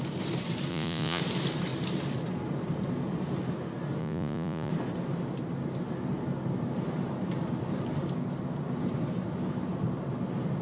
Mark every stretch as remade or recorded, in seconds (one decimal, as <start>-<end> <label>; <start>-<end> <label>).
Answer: 0.0-0.7 recorded; 0.7-1.2 remade; 1.2-4.0 recorded; 4.0-4.7 remade; 4.7-10.6 recorded